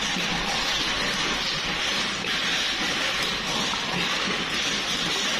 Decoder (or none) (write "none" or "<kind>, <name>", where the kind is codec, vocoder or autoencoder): none